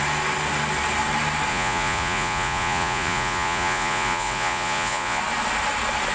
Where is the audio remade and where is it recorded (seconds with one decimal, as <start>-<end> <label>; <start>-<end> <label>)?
0.0-1.5 recorded; 1.5-5.2 remade; 5.2-6.1 recorded